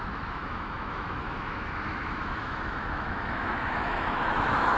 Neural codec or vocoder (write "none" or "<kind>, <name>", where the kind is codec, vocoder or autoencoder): autoencoder, DAC-VAE